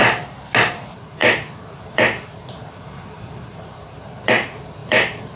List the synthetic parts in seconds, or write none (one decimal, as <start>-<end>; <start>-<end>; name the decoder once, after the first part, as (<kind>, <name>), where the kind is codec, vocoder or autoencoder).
0.7-5.4 (vocoder, BigVGAN v2)

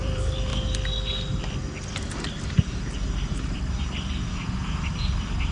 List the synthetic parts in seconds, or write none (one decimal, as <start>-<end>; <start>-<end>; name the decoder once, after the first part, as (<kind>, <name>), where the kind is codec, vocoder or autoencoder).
0.0-0.5 (vocoder, BigVGAN v2); 2.3-5.5